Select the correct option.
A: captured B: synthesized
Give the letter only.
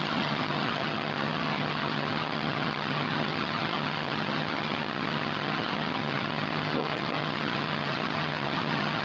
B